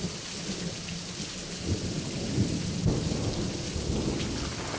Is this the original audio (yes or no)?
yes